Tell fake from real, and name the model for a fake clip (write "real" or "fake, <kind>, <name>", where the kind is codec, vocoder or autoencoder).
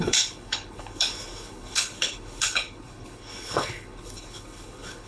fake, codec, HILCodec